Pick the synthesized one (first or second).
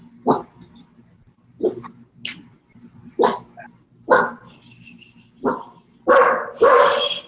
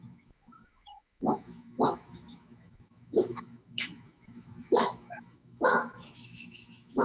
second